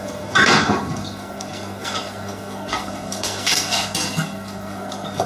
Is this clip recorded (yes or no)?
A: no